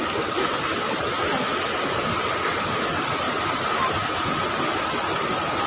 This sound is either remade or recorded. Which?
recorded